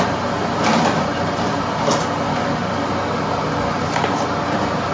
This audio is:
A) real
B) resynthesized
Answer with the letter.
A